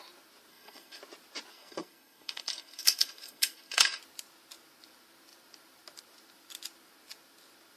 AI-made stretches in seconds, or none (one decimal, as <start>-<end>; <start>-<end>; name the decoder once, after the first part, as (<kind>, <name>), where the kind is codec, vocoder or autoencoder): 0.5-1.0 (codec, SNAC); 1.5-4.0

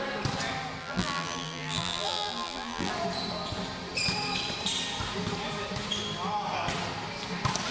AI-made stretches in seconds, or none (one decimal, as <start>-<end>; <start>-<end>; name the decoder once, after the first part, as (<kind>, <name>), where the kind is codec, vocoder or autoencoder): 0.8-2.9 (vocoder, BigVGAN v2)

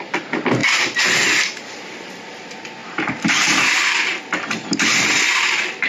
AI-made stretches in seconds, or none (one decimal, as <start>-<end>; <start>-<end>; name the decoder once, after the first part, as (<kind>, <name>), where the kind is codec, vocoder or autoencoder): 0.6-1.2 (vocoder, BigVGAN v2); 2.8-4.2

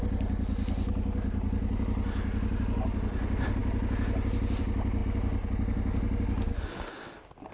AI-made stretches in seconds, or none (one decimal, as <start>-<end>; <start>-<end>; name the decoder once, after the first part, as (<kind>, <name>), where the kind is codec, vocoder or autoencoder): none

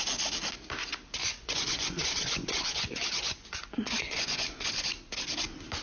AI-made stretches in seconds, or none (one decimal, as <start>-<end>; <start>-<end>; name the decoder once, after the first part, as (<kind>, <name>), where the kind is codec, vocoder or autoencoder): 1.2-4.7 (vocoder, Vocos)